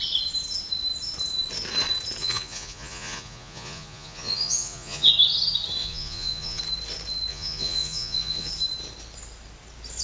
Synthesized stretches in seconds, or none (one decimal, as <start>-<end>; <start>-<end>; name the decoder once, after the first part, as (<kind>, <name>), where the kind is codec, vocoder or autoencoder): 2.2-5.1 (vocoder, Vocos); 5.8-6.6; 7.3-8.5